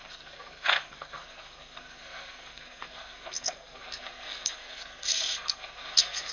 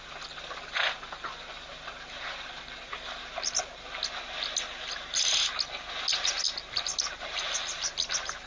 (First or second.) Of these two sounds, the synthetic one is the first